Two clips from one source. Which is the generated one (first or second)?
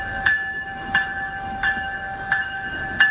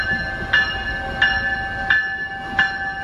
first